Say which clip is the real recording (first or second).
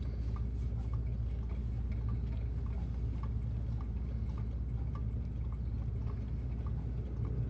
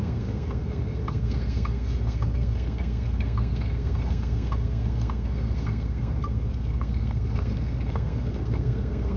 first